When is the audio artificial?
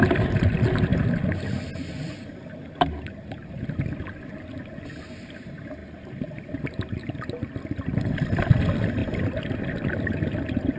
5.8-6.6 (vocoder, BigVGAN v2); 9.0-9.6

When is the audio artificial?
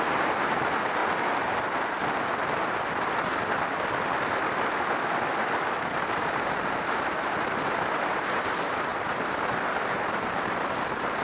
0.0-1.0 (vocoder, BigVGAN v2); 6.2-11.2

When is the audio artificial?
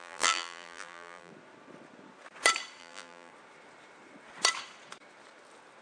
0.0-1.3 (vocoder, BigVGAN v2); 2.8-3.3